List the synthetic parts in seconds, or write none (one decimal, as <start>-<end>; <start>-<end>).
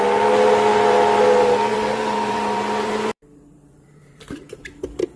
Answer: 1.7-4.8